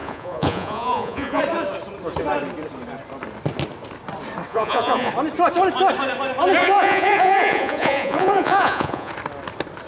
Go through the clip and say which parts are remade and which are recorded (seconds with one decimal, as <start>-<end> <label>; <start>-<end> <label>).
0.0-1.4 remade; 1.4-4.5 recorded; 4.5-5.1 remade; 5.1-6.6 recorded; 6.6-9.1 remade; 9.1-9.9 recorded